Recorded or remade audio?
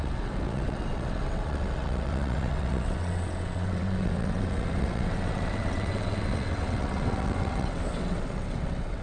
remade